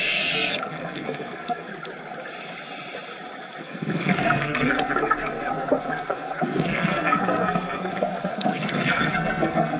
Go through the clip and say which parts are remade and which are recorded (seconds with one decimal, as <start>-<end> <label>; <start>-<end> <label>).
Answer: 0.0-1.7 remade; 1.7-3.6 recorded; 3.6-9.8 remade